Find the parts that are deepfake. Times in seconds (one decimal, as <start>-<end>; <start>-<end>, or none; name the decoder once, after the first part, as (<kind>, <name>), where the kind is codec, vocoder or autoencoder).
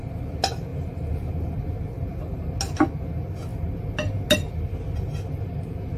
0.7-1.3 (vocoder, BigVGAN v2)